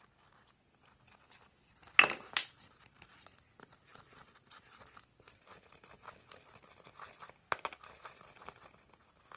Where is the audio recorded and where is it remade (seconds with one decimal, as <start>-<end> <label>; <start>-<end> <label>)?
0.0-9.4 recorded